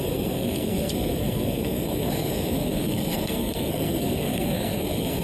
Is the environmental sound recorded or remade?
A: remade